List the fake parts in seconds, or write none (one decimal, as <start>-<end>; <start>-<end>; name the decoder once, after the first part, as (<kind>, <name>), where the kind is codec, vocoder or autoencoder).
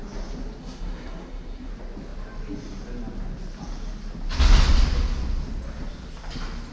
0.6-1.7 (codec, SNAC)